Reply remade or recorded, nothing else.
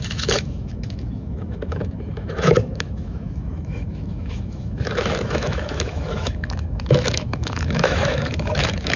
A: remade